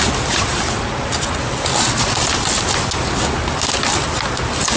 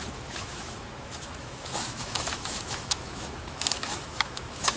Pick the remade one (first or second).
second